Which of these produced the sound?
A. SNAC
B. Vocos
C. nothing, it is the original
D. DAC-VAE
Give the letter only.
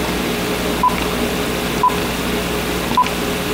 C